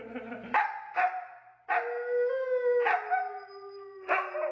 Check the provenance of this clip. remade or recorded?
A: recorded